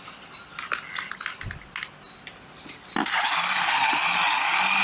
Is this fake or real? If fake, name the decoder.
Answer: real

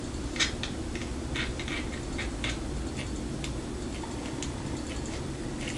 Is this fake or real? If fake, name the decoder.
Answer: real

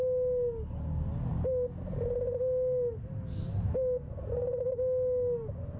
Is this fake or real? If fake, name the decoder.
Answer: real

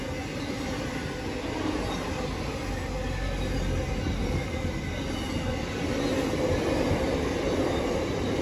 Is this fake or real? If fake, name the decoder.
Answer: real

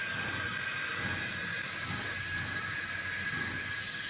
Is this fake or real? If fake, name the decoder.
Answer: real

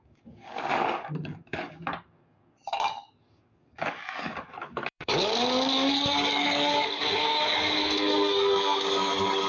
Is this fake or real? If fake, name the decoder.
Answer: fake, codec, DAC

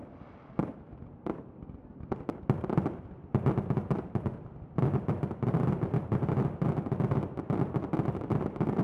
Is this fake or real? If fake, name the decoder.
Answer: real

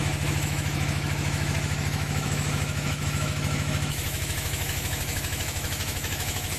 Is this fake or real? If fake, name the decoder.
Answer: fake, autoencoder, DAC-VAE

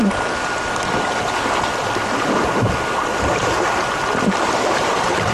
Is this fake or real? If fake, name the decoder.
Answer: real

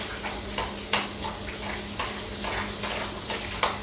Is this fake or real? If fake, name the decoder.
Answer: real